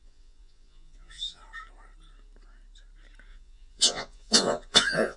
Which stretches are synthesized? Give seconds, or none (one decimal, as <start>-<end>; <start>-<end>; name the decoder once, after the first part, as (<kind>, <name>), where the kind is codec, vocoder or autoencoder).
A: 0.0-1.4 (vocoder, Vocos); 3.3-5.2